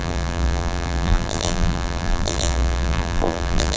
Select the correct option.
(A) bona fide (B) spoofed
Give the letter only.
B